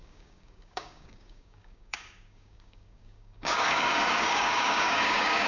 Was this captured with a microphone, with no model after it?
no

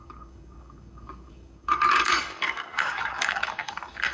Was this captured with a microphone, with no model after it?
no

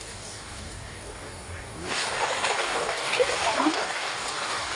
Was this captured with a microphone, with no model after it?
no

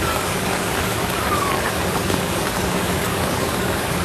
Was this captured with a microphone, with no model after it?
no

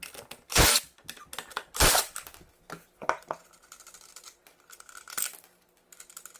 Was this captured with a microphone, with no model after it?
yes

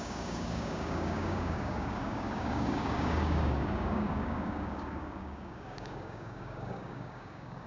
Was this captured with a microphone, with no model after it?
no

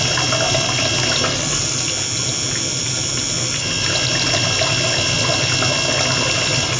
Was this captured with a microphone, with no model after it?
yes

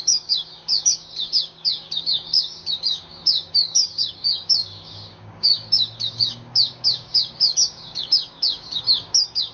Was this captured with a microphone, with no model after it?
no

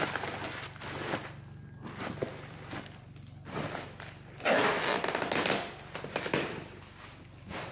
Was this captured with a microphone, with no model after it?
yes